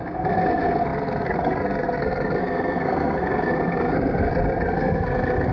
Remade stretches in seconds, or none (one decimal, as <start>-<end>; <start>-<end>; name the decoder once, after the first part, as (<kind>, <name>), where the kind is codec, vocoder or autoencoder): 0.0-5.5 (codec, SNAC)